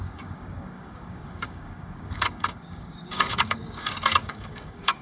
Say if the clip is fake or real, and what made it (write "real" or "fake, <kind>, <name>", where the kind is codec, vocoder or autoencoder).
fake, codec, DAC